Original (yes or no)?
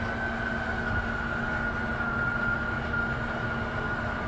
yes